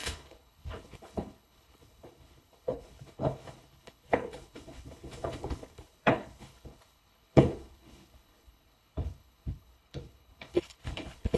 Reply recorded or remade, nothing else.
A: remade